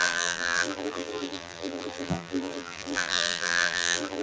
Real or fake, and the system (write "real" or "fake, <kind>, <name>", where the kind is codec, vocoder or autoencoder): fake, vocoder, BigVGAN v2